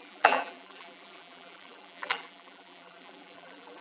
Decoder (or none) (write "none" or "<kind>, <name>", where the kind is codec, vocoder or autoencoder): vocoder, BigVGAN v2